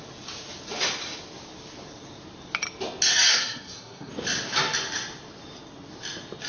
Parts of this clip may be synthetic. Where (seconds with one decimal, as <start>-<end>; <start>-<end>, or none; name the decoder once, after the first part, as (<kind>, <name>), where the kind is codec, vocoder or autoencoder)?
3.3-4.1 (codec, SNAC)